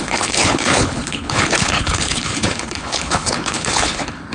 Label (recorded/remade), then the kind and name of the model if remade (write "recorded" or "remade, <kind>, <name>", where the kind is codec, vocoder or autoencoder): remade, codec, HILCodec